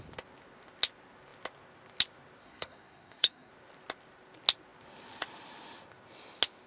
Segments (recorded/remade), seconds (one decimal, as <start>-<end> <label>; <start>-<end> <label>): 0.0-2.4 recorded; 2.4-3.5 remade; 3.5-6.7 recorded